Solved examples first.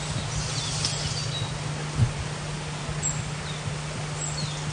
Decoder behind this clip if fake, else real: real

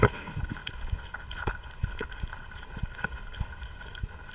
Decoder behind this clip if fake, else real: fake, codec, HILCodec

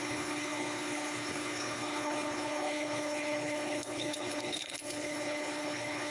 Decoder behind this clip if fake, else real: fake, codec, HILCodec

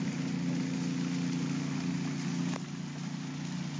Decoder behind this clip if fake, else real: real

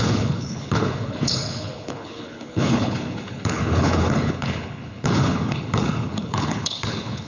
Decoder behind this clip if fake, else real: fake, codec, HILCodec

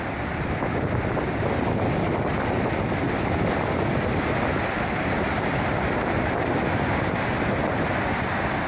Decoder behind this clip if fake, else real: real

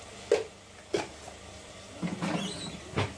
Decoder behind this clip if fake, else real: real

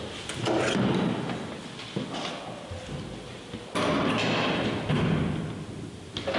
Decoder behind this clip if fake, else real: real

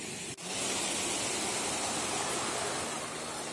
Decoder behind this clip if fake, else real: real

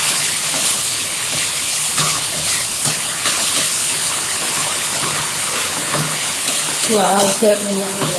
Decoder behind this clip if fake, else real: fake, codec, HILCodec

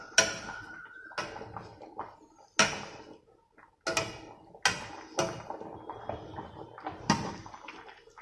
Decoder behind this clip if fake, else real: real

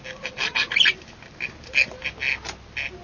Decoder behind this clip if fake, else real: real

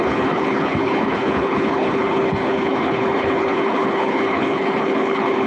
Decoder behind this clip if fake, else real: fake, codec, HILCodec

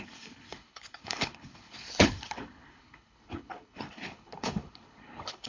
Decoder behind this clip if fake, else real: fake, codec, HILCodec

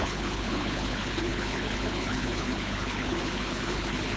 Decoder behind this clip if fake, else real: fake, codec, HILCodec